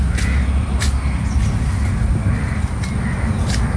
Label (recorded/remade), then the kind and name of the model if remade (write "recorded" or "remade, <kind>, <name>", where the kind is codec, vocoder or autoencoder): recorded